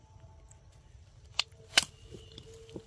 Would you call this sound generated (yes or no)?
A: no